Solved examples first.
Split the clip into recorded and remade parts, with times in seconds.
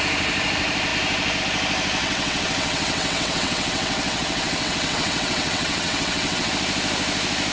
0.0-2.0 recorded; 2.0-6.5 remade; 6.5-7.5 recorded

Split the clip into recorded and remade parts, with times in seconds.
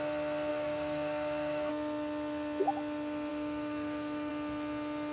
0.0-0.5 recorded; 0.5-1.7 remade; 1.7-3.3 recorded; 3.3-4.3 remade; 4.3-5.1 recorded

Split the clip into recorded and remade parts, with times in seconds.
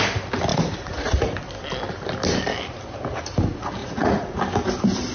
0.0-0.5 recorded; 0.5-1.2 remade; 1.2-3.8 recorded; 3.8-4.4 remade; 4.4-5.1 recorded